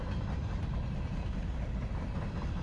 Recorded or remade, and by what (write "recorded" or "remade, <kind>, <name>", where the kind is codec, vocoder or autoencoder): recorded